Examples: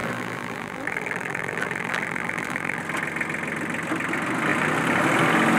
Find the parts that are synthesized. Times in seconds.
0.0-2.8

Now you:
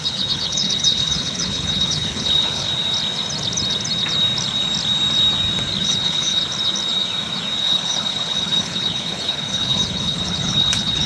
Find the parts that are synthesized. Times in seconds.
0.0-2.7; 5.8-6.4; 7.6-11.1

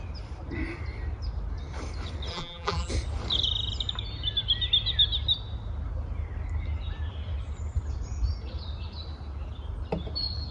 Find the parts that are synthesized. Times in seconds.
2.3-2.9

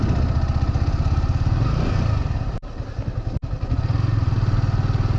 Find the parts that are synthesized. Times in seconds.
none

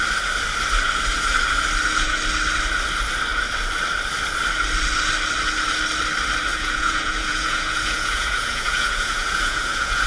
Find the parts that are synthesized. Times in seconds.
6.5-10.1

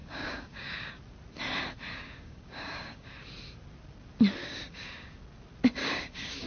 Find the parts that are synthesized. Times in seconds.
0.0-0.9; 1.9-3.2; 4.4-5.2; 5.8-6.5